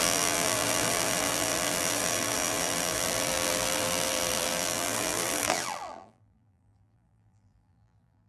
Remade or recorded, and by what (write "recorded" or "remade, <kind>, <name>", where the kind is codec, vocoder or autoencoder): remade, vocoder, BigVGAN v2